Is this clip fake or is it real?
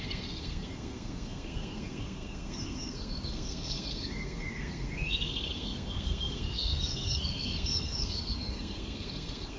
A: fake